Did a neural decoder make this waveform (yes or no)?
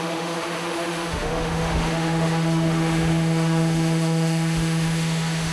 yes